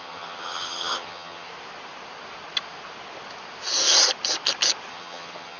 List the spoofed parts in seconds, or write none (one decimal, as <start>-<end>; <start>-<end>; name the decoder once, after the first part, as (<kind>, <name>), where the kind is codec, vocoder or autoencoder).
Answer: 0.0-1.5 (vocoder, HiFi-GAN); 4.9-5.6